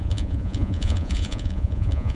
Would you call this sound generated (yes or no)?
yes